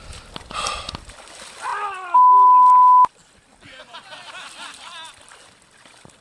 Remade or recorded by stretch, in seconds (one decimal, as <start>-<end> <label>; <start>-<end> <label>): 0.0-6.2 recorded